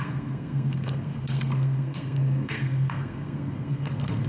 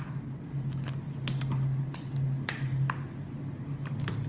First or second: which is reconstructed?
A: first